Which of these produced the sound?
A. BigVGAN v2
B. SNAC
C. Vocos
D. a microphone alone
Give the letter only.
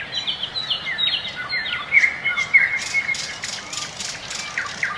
D